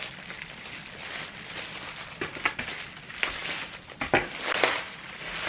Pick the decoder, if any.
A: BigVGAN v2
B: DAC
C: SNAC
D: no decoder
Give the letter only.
D